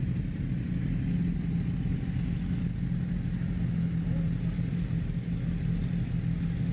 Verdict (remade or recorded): recorded